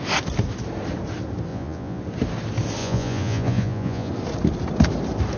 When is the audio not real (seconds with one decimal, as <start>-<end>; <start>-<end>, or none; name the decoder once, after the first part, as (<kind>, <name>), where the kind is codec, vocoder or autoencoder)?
1.5-2.0 (vocoder, Vocos); 2.8-4.1

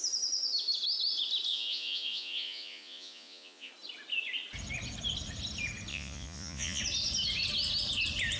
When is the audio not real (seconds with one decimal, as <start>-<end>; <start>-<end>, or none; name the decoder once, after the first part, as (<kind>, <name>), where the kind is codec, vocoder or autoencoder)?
1.5-3.7 (vocoder, Vocos); 5.9-6.8

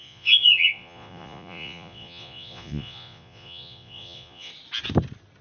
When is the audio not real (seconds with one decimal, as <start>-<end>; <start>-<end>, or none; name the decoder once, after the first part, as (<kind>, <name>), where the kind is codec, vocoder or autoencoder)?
0.0-4.5 (vocoder, Vocos)

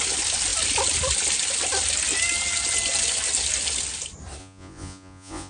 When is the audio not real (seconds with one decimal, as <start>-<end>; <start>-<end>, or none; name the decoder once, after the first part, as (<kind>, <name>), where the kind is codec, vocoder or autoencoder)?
4.4-5.5 (vocoder, Vocos)